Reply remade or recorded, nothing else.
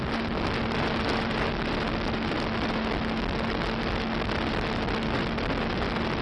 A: recorded